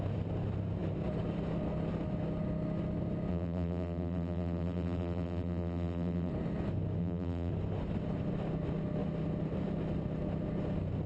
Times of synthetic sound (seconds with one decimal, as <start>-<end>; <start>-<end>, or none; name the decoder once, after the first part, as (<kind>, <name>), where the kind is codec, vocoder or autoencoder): 3.3-6.3 (vocoder, BigVGAN v2); 7.0-7.5